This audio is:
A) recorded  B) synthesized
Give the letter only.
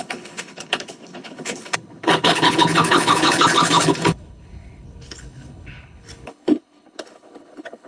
B